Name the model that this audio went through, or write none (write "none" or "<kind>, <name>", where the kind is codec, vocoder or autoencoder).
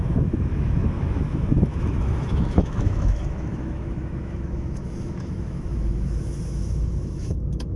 autoencoder, DAC-VAE